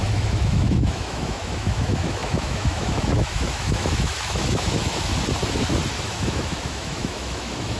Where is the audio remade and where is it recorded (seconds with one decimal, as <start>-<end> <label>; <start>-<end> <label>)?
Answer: 0.0-5.1 remade; 5.1-5.9 recorded; 5.9-7.8 remade